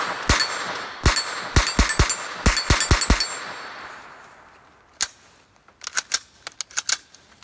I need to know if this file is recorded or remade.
recorded